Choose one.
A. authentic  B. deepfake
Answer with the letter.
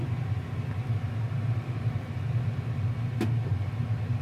A